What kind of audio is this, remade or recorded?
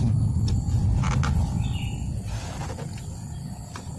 recorded